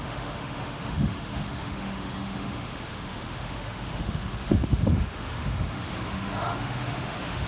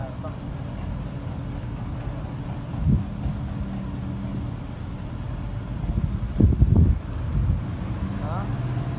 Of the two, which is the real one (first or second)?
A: second